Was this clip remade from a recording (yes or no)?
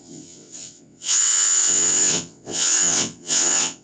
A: yes